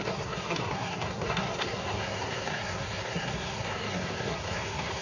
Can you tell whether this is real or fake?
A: fake